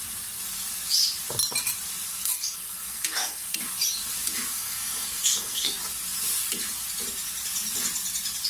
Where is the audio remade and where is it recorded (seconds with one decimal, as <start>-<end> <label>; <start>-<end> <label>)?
0.0-2.1 recorded; 2.1-3.6 remade; 3.6-4.5 recorded; 4.5-5.7 remade; 5.7-8.5 recorded